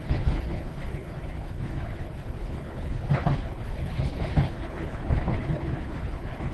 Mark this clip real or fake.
fake